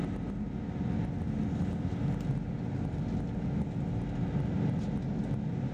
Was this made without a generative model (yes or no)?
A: yes